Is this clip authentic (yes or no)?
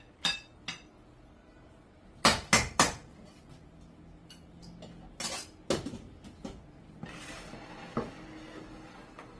yes